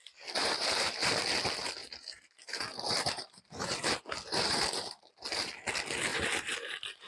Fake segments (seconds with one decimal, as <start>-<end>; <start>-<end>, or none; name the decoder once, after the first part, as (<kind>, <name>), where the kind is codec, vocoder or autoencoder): 0.4-1.2 (vocoder, BigVGAN v2); 1.8-5.5; 6.1-7.1